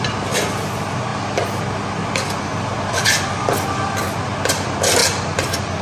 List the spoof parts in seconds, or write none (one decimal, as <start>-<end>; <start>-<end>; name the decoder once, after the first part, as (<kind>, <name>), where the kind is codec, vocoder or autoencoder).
none